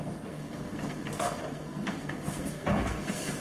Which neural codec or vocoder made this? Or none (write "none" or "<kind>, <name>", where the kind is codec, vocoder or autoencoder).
codec, SNAC